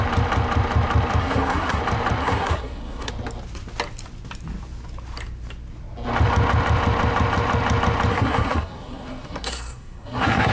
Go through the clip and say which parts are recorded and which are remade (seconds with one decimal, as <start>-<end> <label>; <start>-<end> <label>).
0.0-1.2 recorded; 1.2-1.8 remade; 1.8-2.2 recorded; 2.2-3.1 remade; 3.1-8.1 recorded; 8.1-10.5 remade